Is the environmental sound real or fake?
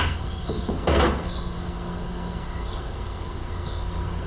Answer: fake